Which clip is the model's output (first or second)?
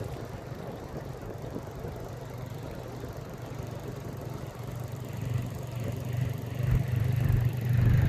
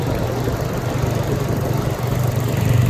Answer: first